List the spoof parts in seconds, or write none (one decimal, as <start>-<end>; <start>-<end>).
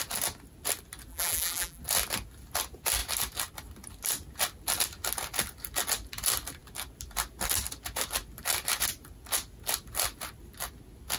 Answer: 1.1-1.8